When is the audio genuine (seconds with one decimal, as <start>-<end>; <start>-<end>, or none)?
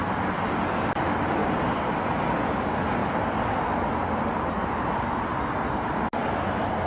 0.0-6.9